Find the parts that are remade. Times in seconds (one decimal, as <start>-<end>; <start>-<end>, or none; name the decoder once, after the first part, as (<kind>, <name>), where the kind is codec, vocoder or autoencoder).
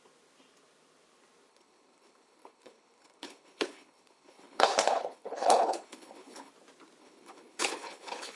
1.5-6.5 (codec, HILCodec); 7.0-8.4